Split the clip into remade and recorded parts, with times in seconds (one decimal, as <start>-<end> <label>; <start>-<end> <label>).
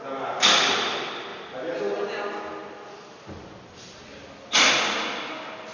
0.0-5.7 recorded